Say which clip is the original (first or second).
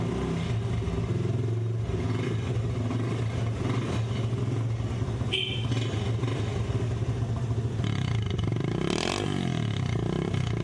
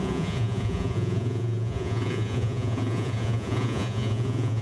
first